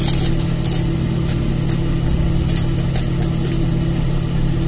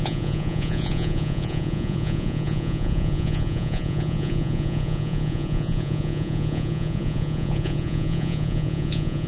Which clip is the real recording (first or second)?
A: first